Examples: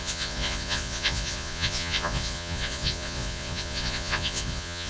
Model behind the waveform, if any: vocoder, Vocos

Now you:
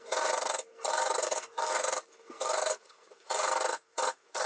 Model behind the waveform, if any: codec, SNAC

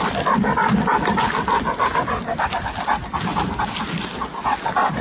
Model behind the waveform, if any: none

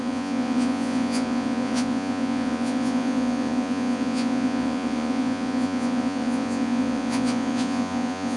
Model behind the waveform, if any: vocoder, Vocos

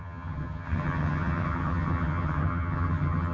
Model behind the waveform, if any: vocoder, HiFi-GAN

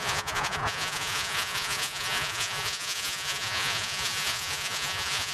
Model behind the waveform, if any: vocoder, Vocos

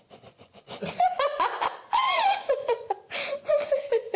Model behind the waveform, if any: vocoder, Vocos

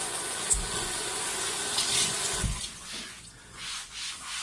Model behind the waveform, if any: vocoder, Vocos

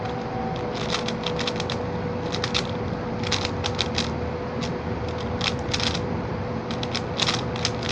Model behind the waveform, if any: none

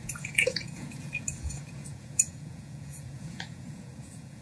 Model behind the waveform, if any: vocoder, Vocos